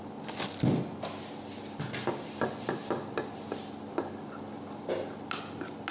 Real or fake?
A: real